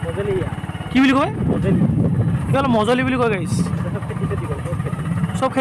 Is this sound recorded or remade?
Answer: recorded